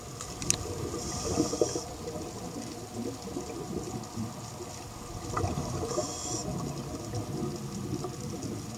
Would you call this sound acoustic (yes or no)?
yes